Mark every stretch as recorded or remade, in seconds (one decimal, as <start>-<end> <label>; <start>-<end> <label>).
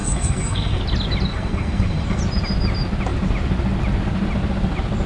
0.0-0.8 remade; 0.8-1.3 recorded; 1.3-2.2 remade; 2.2-5.1 recorded